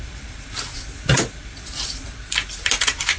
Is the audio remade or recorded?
recorded